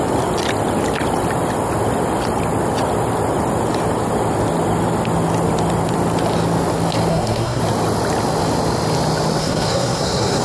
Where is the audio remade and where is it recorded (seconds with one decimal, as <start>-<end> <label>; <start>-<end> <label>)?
0.0-7.1 recorded; 7.1-7.6 remade; 7.6-9.4 recorded; 9.4-10.4 remade